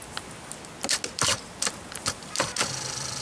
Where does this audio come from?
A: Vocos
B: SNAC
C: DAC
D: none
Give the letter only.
D